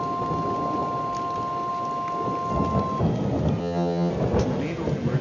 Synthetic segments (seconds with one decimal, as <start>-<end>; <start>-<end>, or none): 3.6-4.1

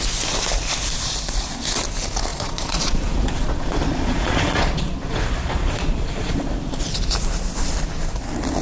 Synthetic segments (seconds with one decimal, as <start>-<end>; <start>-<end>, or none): 2.3-6.5